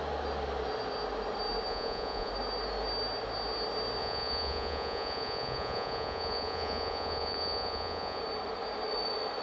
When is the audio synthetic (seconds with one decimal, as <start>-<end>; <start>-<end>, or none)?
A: 1.7-2.3; 4.0-8.2